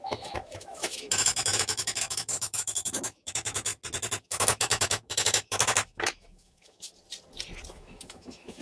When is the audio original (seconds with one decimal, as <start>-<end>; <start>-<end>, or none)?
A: 3.7-4.2; 6.9-7.7